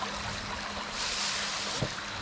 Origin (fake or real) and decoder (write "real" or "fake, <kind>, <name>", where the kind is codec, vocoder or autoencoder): real